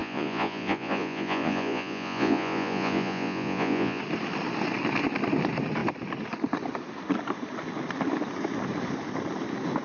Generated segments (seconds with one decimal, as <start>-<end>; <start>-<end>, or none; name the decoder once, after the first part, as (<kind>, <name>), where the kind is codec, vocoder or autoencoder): 0.0-4.0 (vocoder, Vocos)